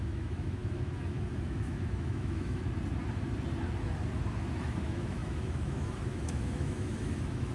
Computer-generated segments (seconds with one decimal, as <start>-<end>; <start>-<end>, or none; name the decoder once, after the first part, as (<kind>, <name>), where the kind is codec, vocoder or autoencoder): 0.0-2.6 (autoencoder, DAC-VAE); 4.6-7.5